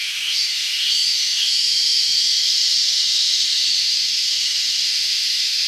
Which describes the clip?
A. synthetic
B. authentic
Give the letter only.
A